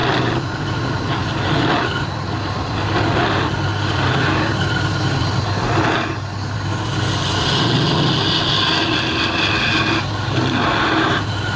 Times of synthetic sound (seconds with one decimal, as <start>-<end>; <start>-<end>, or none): none